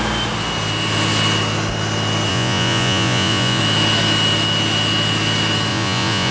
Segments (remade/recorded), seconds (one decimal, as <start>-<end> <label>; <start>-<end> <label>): 0.0-2.3 recorded; 2.3-3.6 remade; 3.6-5.7 recorded; 5.7-6.3 remade